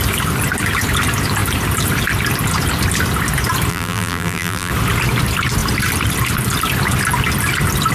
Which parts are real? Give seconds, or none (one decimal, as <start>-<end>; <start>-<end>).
0.0-3.7; 4.7-7.9